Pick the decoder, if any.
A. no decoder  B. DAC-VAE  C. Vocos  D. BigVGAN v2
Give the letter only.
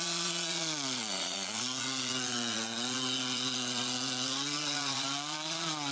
C